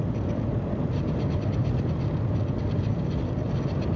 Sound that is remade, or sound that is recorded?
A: recorded